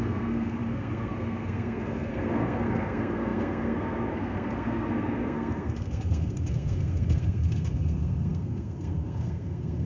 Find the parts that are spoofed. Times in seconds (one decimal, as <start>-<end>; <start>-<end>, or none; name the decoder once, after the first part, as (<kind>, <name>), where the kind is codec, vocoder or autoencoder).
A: 0.0-9.9 (codec, SNAC)